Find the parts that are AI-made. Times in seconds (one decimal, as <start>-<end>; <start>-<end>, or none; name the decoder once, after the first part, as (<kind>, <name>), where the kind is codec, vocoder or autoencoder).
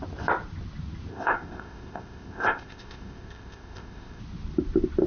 1.1-4.2 (codec, ZipCodec)